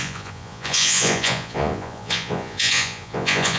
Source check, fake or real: fake